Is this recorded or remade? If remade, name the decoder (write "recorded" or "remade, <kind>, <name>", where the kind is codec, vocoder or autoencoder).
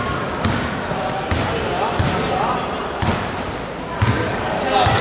recorded